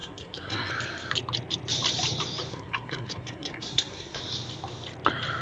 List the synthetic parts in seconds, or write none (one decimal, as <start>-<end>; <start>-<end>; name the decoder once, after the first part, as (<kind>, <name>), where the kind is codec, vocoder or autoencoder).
0.0-0.7 (codec, SNAC); 2.5-4.2